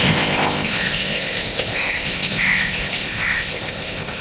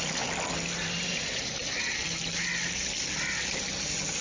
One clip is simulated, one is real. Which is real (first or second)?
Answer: second